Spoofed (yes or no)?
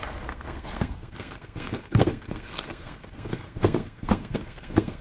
yes